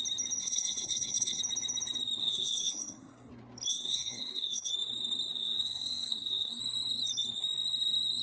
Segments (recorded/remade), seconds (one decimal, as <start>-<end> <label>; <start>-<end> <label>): 0.0-0.4 recorded; 0.4-1.4 remade; 1.4-2.2 recorded; 2.2-3.3 remade; 3.3-3.7 recorded; 3.7-4.7 remade; 4.7-5.3 recorded; 5.3-6.6 remade; 6.6-8.2 recorded